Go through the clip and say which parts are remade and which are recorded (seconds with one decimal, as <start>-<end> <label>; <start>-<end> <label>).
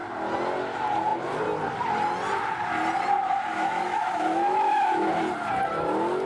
0.0-3.5 recorded; 3.5-5.1 remade; 5.1-6.3 recorded